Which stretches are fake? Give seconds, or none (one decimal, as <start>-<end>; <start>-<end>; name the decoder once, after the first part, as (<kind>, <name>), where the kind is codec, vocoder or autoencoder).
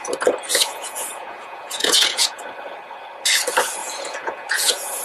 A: 0.5-2.4 (vocoder, Vocos); 3.8-5.0